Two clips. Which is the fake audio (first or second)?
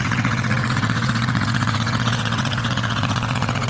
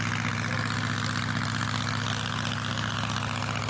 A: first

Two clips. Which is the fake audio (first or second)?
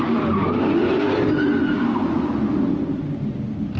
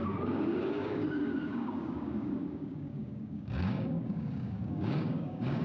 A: second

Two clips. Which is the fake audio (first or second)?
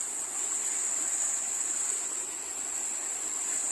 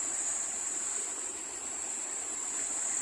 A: second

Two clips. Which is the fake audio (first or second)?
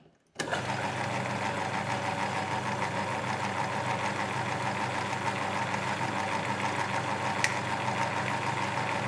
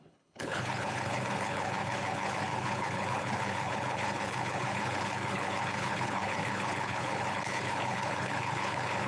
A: second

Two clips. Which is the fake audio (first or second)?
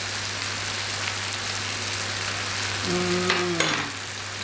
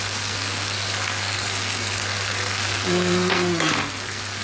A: second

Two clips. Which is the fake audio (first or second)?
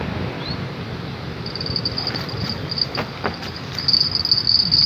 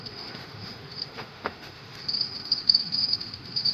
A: second